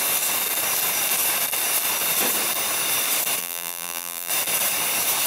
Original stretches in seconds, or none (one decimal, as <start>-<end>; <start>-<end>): 0.0-3.4; 4.3-5.3